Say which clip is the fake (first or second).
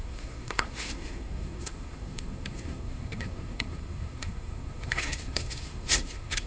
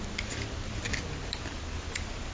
first